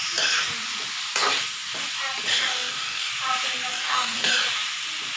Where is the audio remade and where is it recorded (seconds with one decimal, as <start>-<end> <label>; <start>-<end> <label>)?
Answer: 0.0-2.3 recorded; 2.3-3.1 remade; 3.1-3.7 recorded; 3.7-4.3 remade; 4.3-5.2 recorded

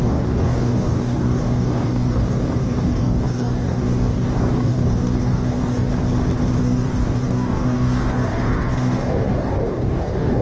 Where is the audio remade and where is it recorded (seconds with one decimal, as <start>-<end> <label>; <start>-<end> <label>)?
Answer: 0.0-5.9 remade; 5.9-6.6 recorded; 6.6-10.4 remade